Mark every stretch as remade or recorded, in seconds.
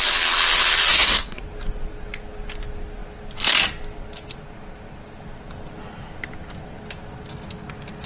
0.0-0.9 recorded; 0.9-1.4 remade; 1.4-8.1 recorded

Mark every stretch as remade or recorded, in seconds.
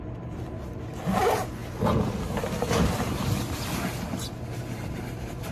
0.0-1.6 remade; 1.6-4.9 recorded; 4.9-5.5 remade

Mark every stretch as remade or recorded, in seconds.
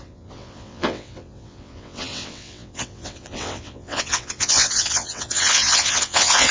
0.0-6.5 remade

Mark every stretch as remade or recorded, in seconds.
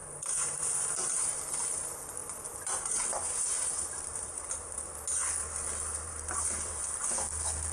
0.0-1.3 remade; 1.3-2.2 recorded; 2.2-4.8 remade; 4.8-5.9 recorded; 5.9-6.8 remade; 6.8-7.7 recorded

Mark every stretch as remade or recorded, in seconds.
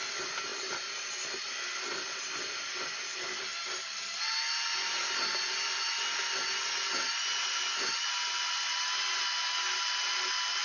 0.0-10.6 recorded